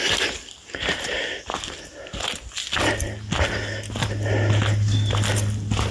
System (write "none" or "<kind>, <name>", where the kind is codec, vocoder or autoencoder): none